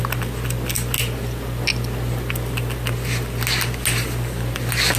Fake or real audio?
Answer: real